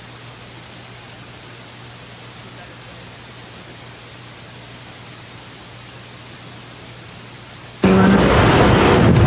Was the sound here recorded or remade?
recorded